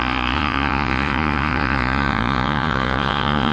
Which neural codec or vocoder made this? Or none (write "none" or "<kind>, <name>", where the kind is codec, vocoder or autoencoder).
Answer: vocoder, Vocos